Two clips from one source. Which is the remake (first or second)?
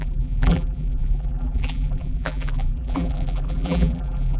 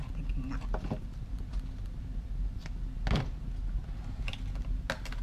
first